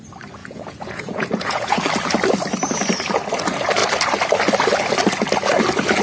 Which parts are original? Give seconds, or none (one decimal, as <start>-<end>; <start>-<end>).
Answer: 0.0-0.4; 1.8-6.0